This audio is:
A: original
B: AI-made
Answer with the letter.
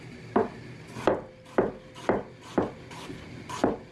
A